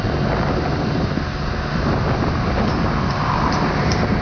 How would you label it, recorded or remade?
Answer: recorded